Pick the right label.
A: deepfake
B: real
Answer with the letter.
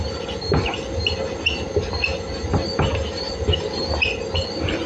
B